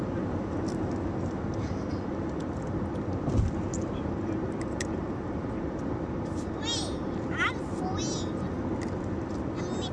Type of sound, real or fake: real